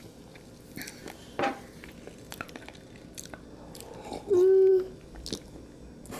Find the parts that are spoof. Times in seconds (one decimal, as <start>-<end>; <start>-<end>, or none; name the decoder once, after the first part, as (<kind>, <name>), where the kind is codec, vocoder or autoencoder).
none